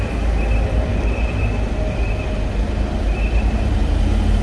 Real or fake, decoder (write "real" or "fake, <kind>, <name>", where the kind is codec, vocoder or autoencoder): real